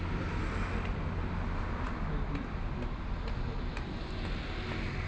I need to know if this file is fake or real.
real